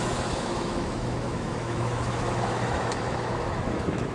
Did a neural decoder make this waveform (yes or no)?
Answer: yes